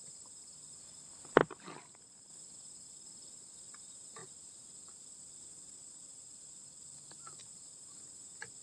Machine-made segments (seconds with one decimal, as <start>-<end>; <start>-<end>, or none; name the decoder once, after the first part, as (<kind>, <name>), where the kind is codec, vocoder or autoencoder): 4.2-7.4 (vocoder, BigVGAN v2)